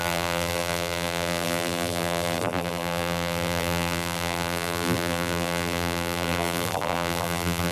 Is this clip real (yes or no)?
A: no